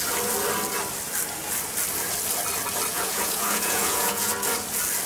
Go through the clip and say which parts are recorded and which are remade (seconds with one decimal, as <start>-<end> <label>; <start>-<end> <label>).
0.0-2.9 recorded; 2.9-4.3 remade; 4.3-5.1 recorded